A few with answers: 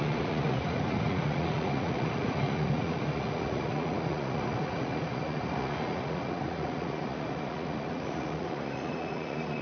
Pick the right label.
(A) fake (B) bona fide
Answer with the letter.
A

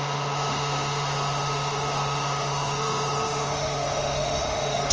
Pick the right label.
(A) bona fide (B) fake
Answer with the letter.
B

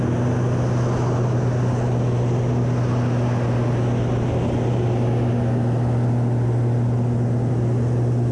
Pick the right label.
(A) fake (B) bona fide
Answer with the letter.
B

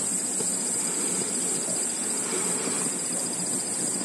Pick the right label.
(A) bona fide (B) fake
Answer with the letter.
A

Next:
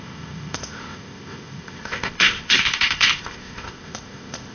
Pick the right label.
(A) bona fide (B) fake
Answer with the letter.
B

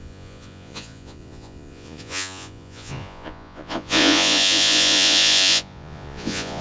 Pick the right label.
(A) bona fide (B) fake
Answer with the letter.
B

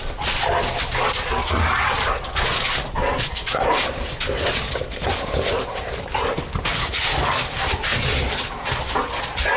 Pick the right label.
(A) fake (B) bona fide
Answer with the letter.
B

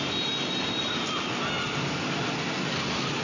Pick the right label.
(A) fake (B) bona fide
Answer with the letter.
B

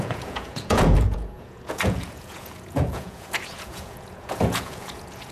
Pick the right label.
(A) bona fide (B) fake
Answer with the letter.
B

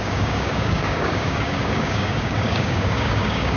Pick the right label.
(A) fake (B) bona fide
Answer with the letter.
A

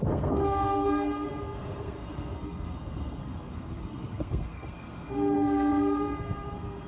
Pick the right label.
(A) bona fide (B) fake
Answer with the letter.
B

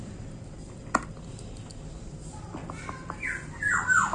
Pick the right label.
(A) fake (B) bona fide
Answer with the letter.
B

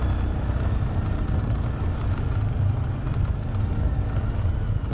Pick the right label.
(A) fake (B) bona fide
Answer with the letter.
B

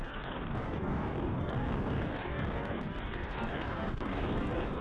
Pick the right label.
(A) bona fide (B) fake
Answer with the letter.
B